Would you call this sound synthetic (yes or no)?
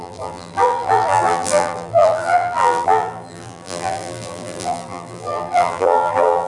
yes